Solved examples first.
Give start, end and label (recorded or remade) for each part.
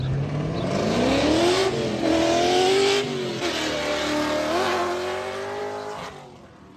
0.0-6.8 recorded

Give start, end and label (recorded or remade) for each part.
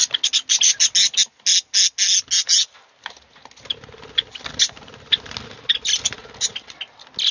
0.0-7.3 recorded